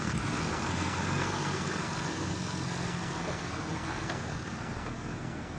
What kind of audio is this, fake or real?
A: fake